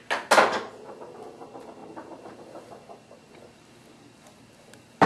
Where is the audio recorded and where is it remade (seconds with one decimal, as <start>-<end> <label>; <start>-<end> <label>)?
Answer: 0.0-5.1 recorded